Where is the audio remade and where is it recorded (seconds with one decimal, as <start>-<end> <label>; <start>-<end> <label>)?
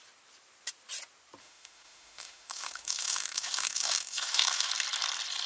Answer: 0.0-1.4 recorded; 1.4-4.7 remade; 4.7-5.5 recorded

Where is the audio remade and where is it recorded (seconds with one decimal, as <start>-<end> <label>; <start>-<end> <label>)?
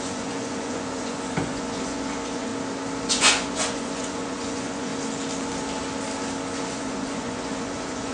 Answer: 0.0-2.5 remade; 2.5-3.1 recorded; 3.1-4.9 remade; 4.9-6.6 recorded; 6.6-8.1 remade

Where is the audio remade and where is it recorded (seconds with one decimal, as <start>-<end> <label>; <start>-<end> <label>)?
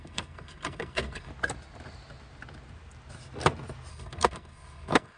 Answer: 0.0-1.3 remade; 1.3-3.9 recorded; 3.9-5.2 remade